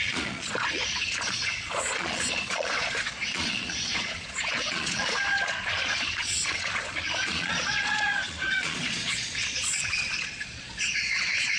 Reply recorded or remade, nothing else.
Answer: remade